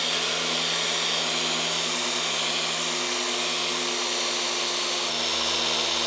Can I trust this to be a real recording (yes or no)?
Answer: yes